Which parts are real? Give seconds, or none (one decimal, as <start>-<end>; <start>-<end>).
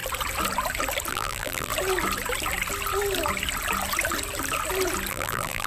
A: 0.0-1.1; 1.7-5.1